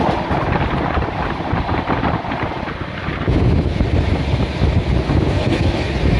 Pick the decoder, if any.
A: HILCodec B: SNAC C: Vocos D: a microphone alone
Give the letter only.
D